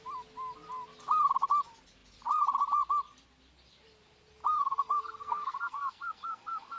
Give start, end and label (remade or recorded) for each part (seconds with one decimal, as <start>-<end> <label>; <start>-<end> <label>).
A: 0.0-4.5 recorded; 4.5-6.8 remade